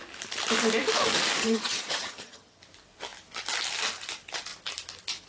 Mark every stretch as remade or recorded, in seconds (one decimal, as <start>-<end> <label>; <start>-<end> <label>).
0.0-1.4 recorded; 1.4-2.6 remade; 2.6-5.3 recorded